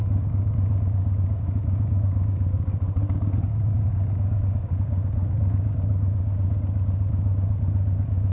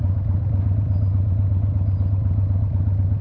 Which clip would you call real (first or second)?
second